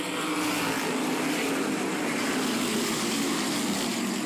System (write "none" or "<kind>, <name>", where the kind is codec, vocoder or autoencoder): none